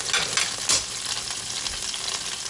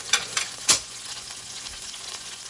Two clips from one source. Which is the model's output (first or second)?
second